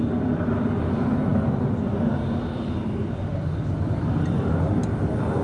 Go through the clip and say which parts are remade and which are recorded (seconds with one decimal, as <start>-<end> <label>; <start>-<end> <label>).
0.0-5.4 recorded

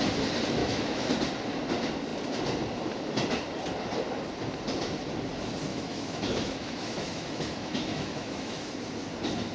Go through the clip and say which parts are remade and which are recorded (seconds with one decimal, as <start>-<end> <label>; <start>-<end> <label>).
0.0-0.6 recorded; 0.6-1.1 remade; 1.1-5.7 recorded; 5.7-8.7 remade; 8.7-9.5 recorded

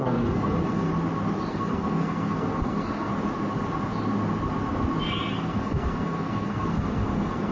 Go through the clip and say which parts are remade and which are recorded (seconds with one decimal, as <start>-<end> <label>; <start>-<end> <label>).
0.0-0.9 remade; 0.9-1.5 recorded; 1.5-3.1 remade; 3.1-5.0 recorded; 5.0-7.5 remade

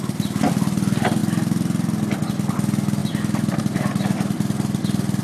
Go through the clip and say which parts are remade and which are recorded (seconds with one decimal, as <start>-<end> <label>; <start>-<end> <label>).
0.0-5.2 recorded

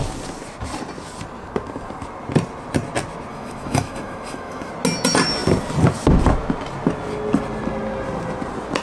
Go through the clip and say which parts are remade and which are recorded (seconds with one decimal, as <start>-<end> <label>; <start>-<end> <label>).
0.0-3.3 recorded; 3.3-4.7 remade; 4.7-8.8 recorded

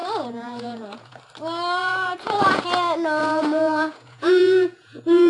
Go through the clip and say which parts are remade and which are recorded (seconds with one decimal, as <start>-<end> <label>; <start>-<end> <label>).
0.0-1.2 remade; 1.2-1.8 recorded; 1.8-2.6 remade; 2.6-3.2 recorded; 3.2-5.3 remade

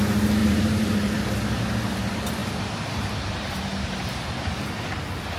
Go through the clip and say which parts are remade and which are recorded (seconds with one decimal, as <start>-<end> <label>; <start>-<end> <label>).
0.0-0.4 recorded; 0.4-1.2 remade; 1.2-2.4 recorded; 2.4-5.0 remade; 5.0-5.4 recorded